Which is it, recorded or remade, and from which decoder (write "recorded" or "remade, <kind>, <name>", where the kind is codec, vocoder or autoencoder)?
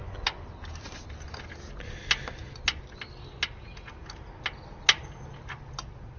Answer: recorded